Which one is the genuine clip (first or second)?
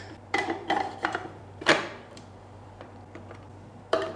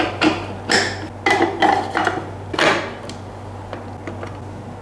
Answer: second